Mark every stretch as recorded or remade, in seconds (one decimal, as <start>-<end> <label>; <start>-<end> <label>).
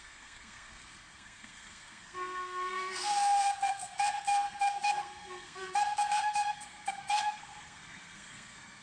0.0-8.8 remade